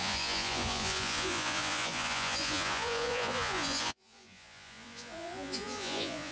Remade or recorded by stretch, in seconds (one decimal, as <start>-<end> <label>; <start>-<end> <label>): 0.0-6.3 remade